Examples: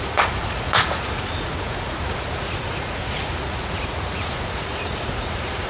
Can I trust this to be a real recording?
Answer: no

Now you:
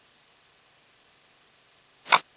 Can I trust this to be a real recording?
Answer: yes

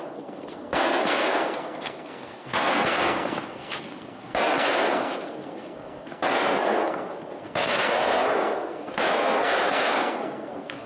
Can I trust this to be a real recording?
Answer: no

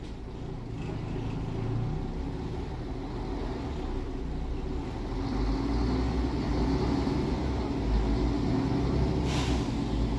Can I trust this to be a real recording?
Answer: yes